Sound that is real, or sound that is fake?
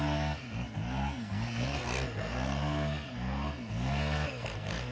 fake